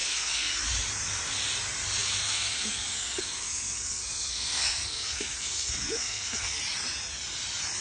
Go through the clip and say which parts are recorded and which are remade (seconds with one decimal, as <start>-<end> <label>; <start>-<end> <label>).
0.0-0.6 remade; 0.6-2.0 recorded; 2.0-6.6 remade; 6.6-7.8 recorded